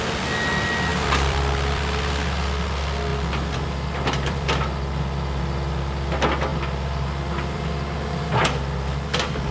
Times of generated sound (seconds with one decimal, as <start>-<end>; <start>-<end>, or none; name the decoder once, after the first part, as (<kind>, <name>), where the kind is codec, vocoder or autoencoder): 0.9-2.0 (vocoder, BigVGAN v2); 3.1-5.4; 6.5-7.6